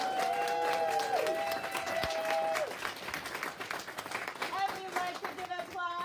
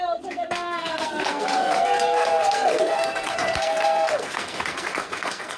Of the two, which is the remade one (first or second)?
second